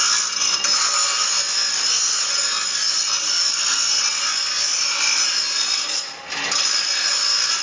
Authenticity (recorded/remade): recorded